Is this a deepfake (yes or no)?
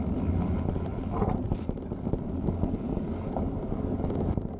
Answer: no